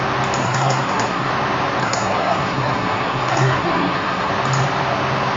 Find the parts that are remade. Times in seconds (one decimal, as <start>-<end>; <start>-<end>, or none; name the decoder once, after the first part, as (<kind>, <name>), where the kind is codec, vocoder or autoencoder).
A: 0.4-1.3 (codec, SNAC); 1.8-4.3